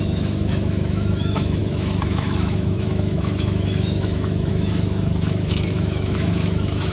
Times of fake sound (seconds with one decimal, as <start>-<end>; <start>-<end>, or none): 0.0-6.9

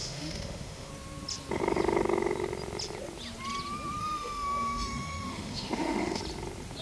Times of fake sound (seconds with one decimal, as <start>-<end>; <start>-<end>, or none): 0.0-0.9; 4.0-6.2

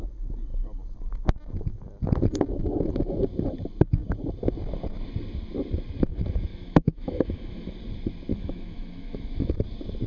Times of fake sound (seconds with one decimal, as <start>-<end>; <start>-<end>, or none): 6.5-7.7; 8.3-9.5

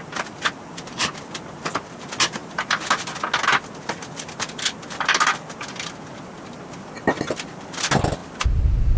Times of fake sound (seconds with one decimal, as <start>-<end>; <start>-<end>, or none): none